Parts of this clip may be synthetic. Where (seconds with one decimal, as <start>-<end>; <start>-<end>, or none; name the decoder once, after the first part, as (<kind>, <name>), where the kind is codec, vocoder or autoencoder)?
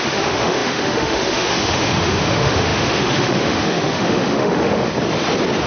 0.0-4.9 (autoencoder, DAC-VAE)